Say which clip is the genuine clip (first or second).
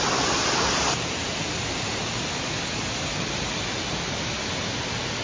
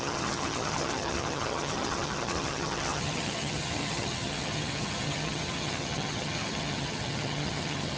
first